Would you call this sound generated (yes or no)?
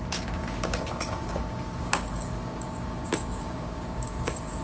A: yes